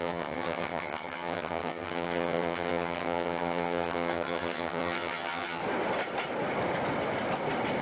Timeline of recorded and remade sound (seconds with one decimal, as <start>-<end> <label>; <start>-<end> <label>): 0.0-5.6 remade; 5.6-7.8 recorded